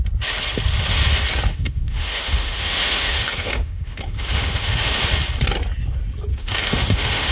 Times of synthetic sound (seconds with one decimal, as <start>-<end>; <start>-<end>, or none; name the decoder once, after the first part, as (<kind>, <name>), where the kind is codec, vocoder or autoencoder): 1.5-4.9 (autoencoder, DAC-VAE); 6.3-7.3